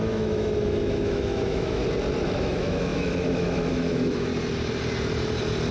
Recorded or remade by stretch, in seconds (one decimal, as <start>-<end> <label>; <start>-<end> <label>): 0.0-1.8 remade; 1.8-2.4 recorded; 2.4-4.3 remade; 4.3-5.7 recorded